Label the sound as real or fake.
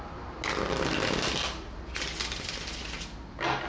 real